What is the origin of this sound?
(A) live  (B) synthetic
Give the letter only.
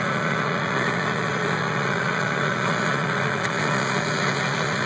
B